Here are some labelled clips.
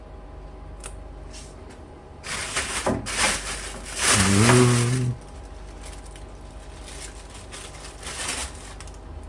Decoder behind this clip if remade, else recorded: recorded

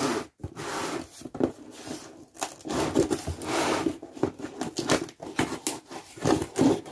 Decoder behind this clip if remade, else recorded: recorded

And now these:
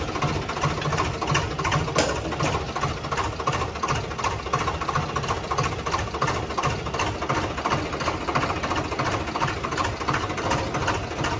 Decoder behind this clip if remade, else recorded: recorded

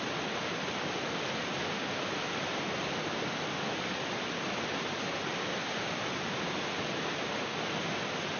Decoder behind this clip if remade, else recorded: recorded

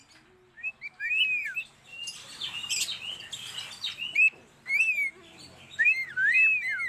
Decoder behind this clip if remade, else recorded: recorded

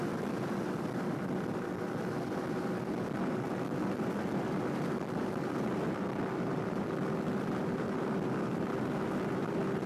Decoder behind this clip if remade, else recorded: remade, vocoder, BigVGAN v2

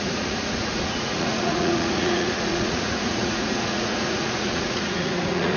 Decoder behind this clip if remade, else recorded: remade, vocoder, Vocos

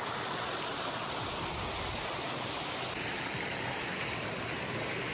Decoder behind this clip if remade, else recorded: recorded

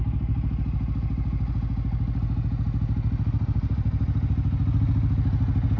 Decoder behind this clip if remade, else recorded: recorded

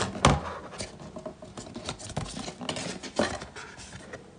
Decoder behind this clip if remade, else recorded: recorded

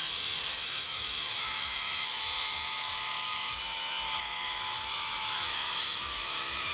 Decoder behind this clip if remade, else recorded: remade, autoencoder, DAC-VAE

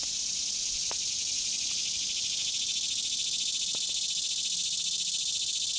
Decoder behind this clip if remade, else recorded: recorded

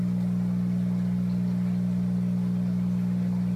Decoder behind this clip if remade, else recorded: recorded